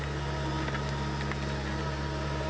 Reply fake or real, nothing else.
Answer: real